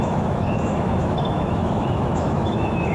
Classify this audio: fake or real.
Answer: fake